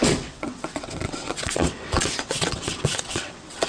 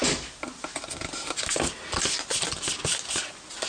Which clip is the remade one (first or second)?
first